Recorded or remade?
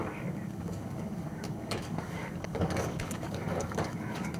remade